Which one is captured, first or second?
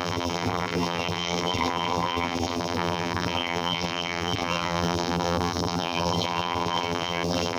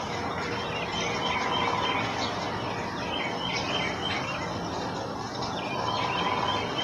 second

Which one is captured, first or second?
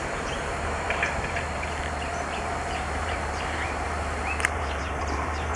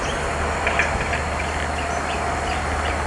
second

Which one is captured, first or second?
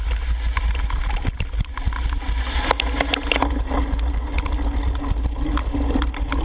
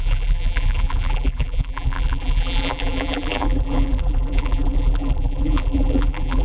first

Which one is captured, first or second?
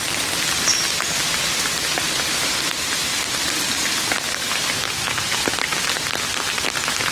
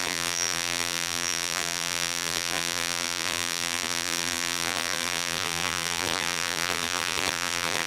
first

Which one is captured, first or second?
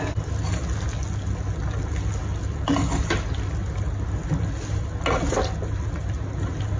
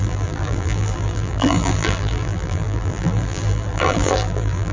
first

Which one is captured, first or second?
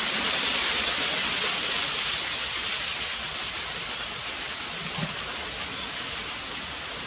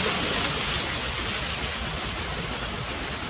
second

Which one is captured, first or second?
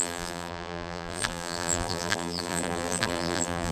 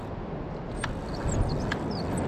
second